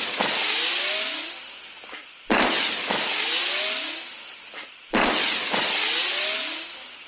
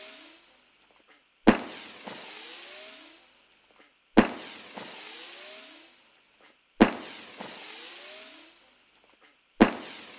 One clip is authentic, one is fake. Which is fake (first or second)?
first